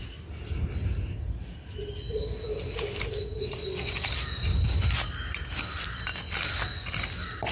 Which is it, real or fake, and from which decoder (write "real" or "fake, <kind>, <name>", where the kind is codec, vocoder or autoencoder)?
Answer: real